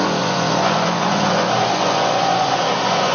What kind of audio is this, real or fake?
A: fake